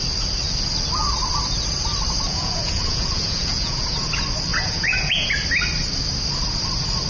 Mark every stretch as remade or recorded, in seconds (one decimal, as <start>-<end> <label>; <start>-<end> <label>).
0.0-2.3 recorded; 2.3-4.1 remade; 4.1-4.5 recorded; 4.5-5.3 remade; 5.3-7.1 recorded